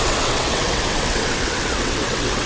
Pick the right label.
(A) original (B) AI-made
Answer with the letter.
B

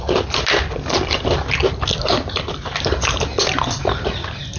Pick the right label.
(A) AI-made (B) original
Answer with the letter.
B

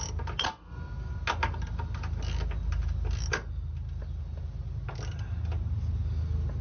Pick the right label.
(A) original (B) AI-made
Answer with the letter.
A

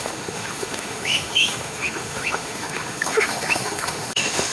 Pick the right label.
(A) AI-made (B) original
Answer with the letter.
A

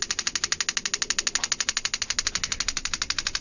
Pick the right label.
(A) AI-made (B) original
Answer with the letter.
B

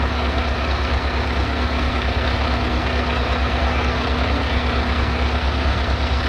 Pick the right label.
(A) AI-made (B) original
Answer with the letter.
A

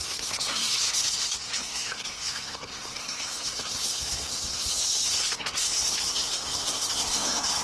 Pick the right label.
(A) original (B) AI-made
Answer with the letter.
B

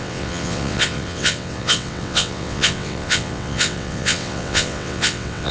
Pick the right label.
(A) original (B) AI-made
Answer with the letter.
B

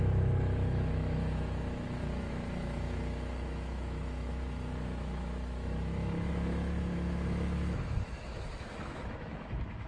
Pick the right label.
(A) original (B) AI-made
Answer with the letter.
B